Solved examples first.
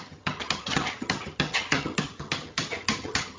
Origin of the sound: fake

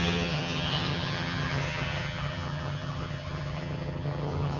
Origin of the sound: fake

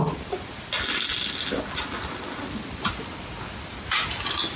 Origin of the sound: real